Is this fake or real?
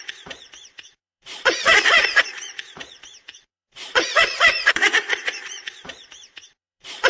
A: fake